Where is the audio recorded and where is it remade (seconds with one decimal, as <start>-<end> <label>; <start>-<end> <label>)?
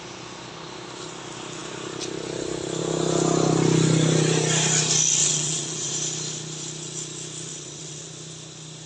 0.0-5.2 recorded; 5.2-5.9 remade; 5.9-7.5 recorded; 7.5-8.1 remade; 8.1-8.9 recorded